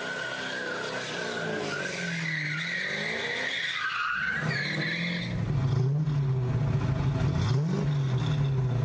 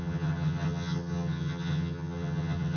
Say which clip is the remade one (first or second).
second